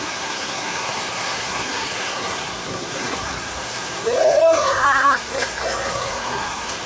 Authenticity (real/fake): fake